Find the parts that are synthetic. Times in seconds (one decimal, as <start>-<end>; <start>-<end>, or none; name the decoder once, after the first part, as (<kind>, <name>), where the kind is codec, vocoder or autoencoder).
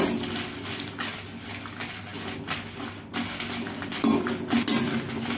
none